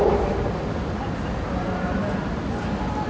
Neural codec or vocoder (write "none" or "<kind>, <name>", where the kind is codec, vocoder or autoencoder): none